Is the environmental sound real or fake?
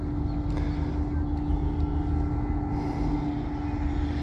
real